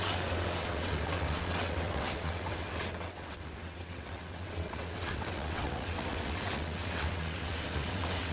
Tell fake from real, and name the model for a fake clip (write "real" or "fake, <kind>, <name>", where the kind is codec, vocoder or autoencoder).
fake, vocoder, WaveNeXt